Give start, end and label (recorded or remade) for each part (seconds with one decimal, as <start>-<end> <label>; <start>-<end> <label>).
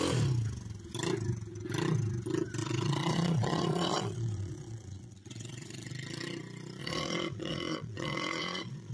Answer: 0.0-2.6 recorded; 2.6-5.9 remade; 5.9-6.8 recorded; 6.8-8.9 remade